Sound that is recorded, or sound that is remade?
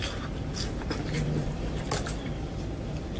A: recorded